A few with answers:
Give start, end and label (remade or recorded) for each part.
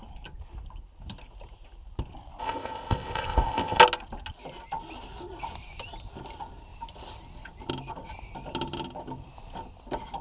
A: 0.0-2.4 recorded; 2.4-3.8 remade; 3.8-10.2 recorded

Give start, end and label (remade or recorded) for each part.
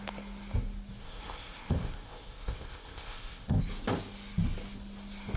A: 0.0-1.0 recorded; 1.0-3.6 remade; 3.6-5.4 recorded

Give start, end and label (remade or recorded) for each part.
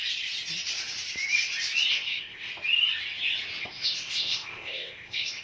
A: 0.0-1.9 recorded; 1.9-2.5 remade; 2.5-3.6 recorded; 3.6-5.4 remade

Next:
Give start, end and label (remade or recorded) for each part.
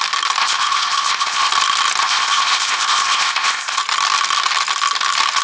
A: 0.0-0.4 recorded; 0.4-1.5 remade; 1.5-2.0 recorded; 2.0-3.8 remade; 3.8-5.4 recorded